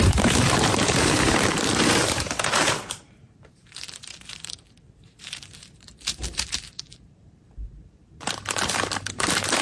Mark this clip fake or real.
fake